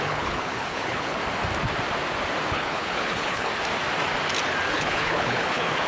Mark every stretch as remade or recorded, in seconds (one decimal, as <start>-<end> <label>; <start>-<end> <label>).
0.0-1.2 remade; 1.2-2.5 recorded; 2.5-3.5 remade; 3.5-4.7 recorded; 4.7-5.9 remade